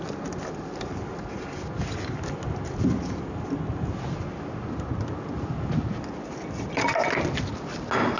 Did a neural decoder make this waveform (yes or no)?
no